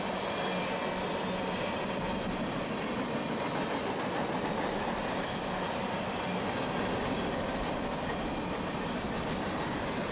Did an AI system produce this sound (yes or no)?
no